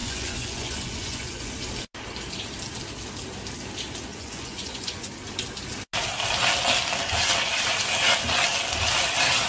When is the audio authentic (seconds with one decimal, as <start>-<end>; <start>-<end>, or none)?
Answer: 1.5-4.1; 5.1-9.5